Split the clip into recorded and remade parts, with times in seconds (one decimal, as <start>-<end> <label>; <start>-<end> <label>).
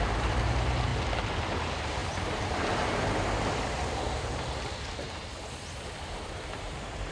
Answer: 0.0-0.9 remade; 0.9-1.5 recorded; 1.5-7.1 remade